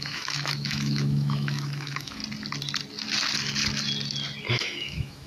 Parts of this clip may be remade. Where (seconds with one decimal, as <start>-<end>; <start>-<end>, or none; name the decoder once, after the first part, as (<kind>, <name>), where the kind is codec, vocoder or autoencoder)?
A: 0.0-2.2 (autoencoder, DAC-VAE); 4.5-5.3